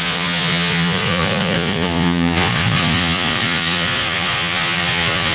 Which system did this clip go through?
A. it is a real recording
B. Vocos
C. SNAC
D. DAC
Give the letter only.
B